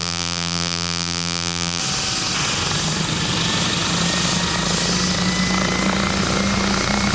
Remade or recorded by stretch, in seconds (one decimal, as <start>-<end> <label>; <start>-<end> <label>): 0.0-1.8 remade; 1.8-7.1 recorded